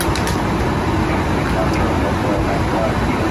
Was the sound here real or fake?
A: real